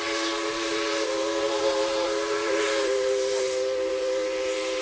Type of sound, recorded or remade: remade